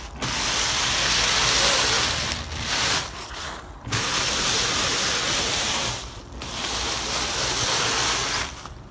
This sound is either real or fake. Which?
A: real